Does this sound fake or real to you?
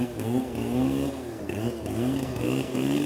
fake